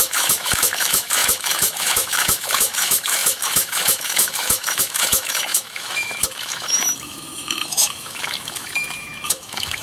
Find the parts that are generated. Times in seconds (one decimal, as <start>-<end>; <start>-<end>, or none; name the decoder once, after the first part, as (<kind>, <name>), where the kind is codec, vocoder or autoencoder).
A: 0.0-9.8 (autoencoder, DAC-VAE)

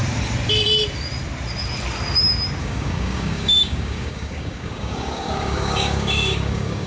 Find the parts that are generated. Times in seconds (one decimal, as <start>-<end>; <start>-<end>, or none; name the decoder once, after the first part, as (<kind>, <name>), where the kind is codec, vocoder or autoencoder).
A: 2.6-6.9 (codec, DAC)

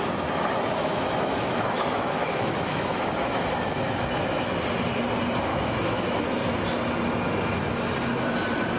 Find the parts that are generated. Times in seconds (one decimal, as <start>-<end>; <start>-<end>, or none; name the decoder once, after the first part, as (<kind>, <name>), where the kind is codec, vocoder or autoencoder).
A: 0.8-4.5 (autoencoder, DAC-VAE); 5.5-6.3

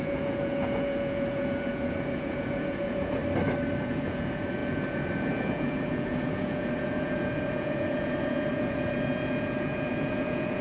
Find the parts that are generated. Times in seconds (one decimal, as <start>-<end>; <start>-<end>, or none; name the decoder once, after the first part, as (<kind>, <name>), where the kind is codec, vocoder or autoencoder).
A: 0.0-3.2 (vocoder, Vocos); 3.8-10.6

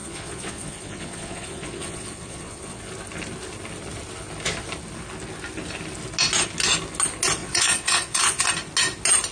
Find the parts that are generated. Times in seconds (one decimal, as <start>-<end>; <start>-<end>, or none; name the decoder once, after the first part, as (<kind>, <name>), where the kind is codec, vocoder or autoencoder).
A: 0.0-2.8 (vocoder, Vocos); 7.4-8.4